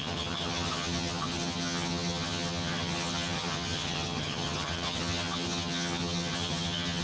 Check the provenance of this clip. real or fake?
fake